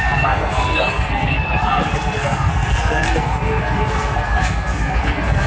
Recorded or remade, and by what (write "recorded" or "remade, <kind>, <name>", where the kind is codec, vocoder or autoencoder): remade, codec, SNAC